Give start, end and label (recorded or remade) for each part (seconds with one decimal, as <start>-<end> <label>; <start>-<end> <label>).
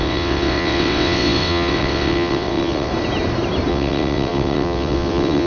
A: 0.0-2.9 remade; 2.9-3.7 recorded; 3.7-5.5 remade